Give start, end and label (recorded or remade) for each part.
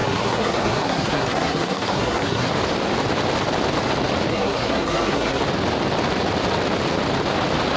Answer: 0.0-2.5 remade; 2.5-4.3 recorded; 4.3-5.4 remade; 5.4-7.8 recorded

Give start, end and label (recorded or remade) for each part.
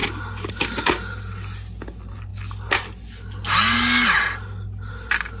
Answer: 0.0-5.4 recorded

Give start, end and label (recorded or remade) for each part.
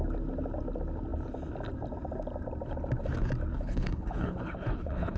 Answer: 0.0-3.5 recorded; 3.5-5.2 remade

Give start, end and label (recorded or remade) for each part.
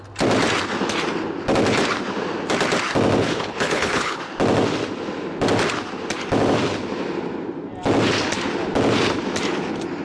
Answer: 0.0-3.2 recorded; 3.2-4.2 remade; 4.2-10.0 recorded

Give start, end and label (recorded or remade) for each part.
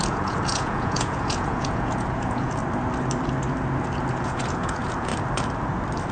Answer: 0.0-2.6 remade; 2.6-4.0 recorded; 4.0-5.1 remade; 5.1-6.1 recorded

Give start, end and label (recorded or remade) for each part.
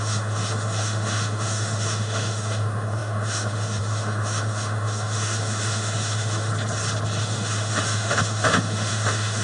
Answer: 0.0-6.5 remade; 6.5-7.2 recorded; 7.2-9.4 remade